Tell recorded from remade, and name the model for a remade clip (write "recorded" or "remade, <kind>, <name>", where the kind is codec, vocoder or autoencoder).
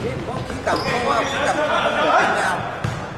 remade, vocoder, Vocos